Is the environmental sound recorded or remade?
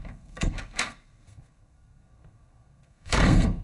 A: remade